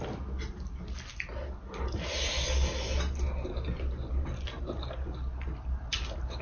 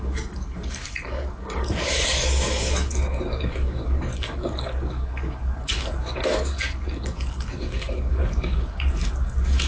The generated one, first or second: second